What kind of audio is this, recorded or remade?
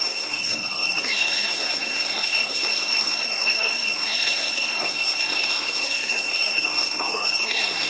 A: remade